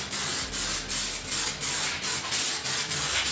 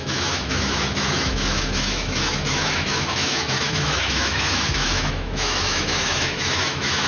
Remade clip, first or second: second